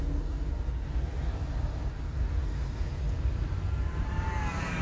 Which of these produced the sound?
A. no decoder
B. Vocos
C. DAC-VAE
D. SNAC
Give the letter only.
A